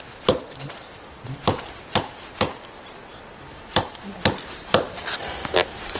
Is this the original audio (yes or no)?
yes